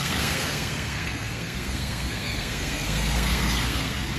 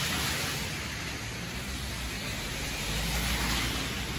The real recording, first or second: second